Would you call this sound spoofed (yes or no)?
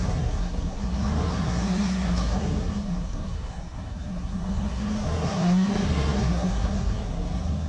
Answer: yes